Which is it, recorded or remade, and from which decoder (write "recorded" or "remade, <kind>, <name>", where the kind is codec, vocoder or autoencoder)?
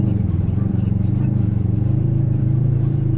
remade, vocoder, BigVGAN v2